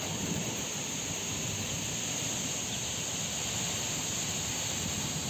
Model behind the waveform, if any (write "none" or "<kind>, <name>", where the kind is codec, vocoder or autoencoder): none